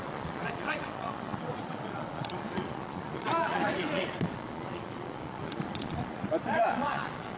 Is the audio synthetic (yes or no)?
yes